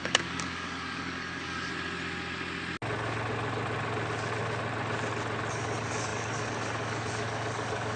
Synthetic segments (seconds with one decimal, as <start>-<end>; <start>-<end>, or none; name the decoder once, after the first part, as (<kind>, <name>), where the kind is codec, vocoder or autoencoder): 0.0-1.7 (codec, DAC); 5.5-8.0